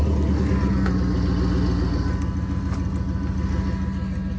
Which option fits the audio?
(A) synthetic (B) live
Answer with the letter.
B